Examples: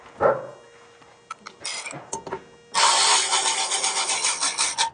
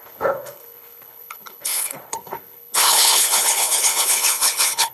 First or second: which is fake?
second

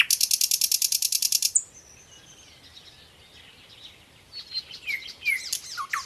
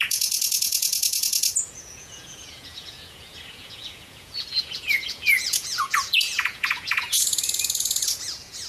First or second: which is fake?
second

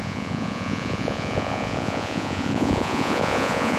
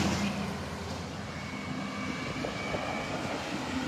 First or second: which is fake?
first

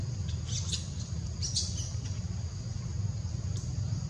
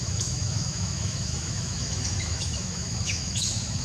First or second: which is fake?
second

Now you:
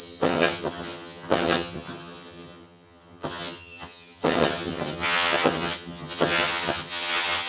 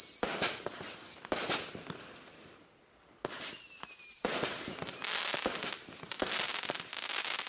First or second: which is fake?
first